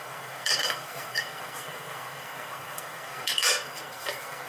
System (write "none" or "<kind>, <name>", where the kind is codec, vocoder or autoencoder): codec, SNAC